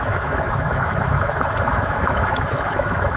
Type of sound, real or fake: fake